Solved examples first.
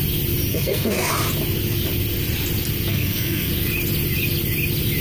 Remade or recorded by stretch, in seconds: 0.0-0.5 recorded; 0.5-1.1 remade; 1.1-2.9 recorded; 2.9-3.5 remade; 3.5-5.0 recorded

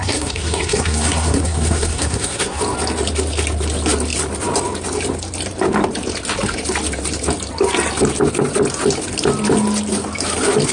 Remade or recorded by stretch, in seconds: 0.0-2.6 remade; 2.6-10.7 recorded

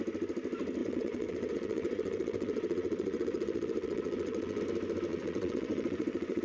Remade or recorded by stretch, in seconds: 0.0-0.8 recorded; 0.8-4.6 remade; 4.6-5.1 recorded; 5.1-6.4 remade

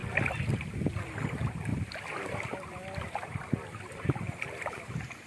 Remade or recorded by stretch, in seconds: 0.0-1.7 recorded; 1.7-5.3 remade

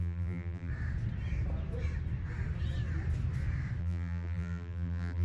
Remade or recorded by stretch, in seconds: 0.0-0.7 remade; 0.7-3.8 recorded; 3.8-5.2 remade